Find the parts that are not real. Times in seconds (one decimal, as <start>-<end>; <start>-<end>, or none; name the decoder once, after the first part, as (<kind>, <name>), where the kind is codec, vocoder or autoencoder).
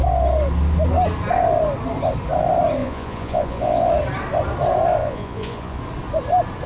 2.8-3.9 (vocoder, Vocos); 5.0-5.8